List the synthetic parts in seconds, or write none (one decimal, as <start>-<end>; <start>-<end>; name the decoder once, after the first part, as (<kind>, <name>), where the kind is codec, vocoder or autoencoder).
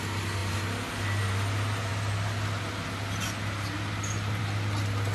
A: none